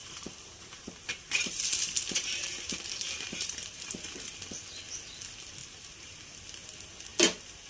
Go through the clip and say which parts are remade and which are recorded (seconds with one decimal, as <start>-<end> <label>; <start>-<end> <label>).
0.0-4.3 remade; 4.3-5.6 recorded; 5.6-6.2 remade; 6.2-7.1 recorded; 7.1-7.7 remade